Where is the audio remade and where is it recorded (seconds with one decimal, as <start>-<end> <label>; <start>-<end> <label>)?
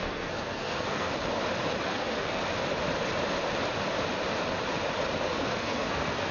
0.0-1.1 remade; 1.1-1.8 recorded; 1.8-2.4 remade; 2.4-5.2 recorded; 5.2-6.3 remade